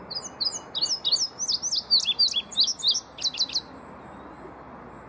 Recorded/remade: recorded